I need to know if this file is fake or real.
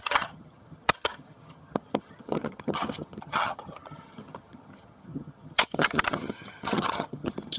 fake